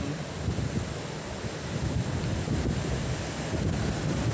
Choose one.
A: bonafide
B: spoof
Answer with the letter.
A